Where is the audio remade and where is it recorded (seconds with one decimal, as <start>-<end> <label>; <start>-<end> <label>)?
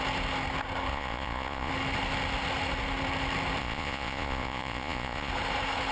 0.0-0.9 recorded; 0.9-1.7 remade; 1.7-3.6 recorded; 3.6-5.3 remade; 5.3-5.9 recorded